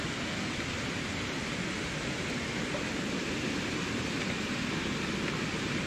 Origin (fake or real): fake